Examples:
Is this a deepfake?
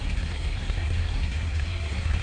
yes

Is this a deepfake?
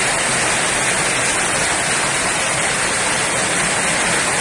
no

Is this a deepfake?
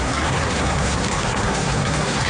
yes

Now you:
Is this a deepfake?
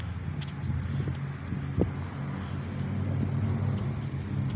no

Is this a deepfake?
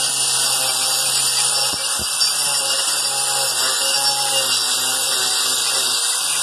no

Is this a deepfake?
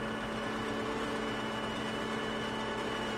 no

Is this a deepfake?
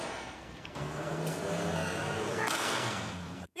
yes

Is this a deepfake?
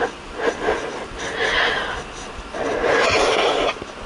no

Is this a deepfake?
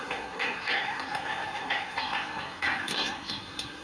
yes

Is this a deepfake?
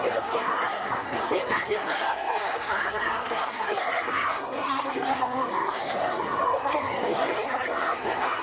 yes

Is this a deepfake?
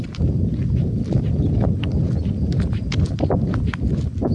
no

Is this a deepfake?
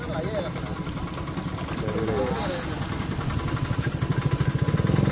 no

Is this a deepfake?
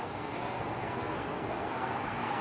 yes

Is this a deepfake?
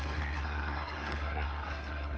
yes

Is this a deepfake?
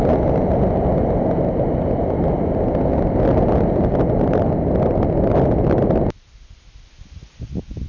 no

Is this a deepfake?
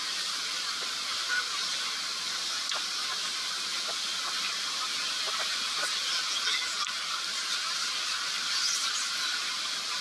no